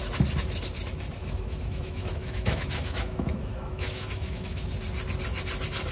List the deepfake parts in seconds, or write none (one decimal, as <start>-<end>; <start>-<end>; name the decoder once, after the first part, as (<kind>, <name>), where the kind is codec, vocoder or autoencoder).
1.2-4.7 (autoencoder, DAC-VAE)